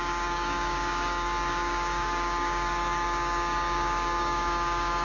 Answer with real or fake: fake